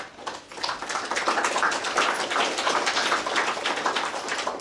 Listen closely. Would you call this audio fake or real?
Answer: real